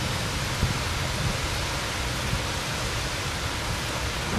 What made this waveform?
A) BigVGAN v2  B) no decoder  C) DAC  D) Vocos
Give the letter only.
B